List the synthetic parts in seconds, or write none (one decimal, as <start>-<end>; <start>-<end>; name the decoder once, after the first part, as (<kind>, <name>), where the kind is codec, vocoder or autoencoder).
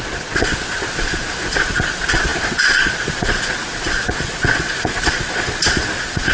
0.0-6.3 (vocoder, Vocos)